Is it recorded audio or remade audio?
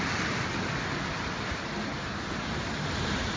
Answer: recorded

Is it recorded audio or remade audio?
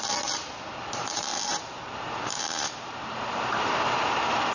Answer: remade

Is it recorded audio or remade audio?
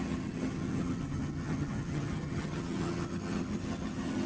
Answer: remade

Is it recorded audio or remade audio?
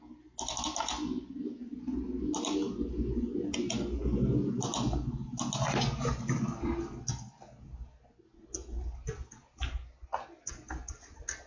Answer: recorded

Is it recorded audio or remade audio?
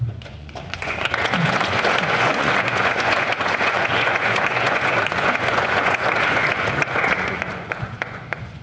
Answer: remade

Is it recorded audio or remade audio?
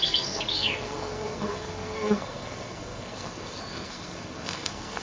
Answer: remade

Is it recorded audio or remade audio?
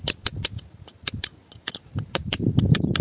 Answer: recorded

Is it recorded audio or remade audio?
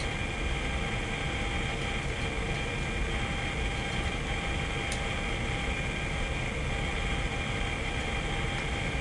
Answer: recorded